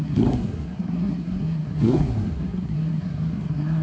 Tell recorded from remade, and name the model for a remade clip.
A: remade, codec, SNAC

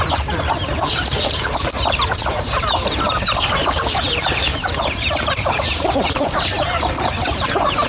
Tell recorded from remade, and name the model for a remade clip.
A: remade, vocoder, BigVGAN v2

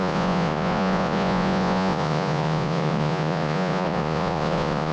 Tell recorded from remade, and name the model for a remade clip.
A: remade, vocoder, Vocos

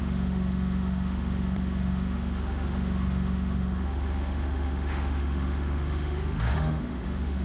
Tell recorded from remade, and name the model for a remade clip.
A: remade, autoencoder, DAC-VAE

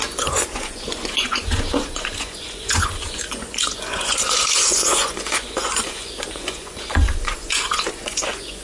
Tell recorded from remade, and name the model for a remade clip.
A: remade, vocoder, Vocos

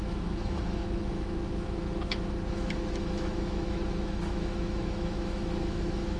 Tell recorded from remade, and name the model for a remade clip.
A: remade, autoencoder, DAC-VAE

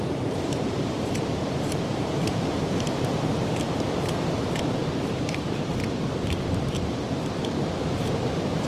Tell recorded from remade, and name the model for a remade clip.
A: remade, vocoder, BigVGAN v2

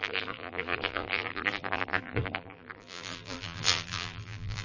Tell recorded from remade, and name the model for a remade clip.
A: remade, vocoder, BigVGAN v2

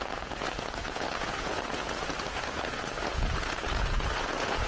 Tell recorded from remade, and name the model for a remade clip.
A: remade, vocoder, Vocos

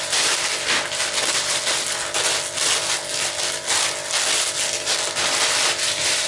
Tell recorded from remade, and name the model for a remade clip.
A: recorded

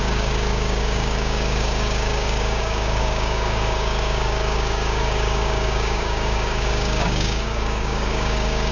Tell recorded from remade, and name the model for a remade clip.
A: remade, codec, DAC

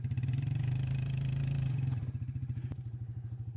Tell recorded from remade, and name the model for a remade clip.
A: remade, vocoder, BigVGAN v2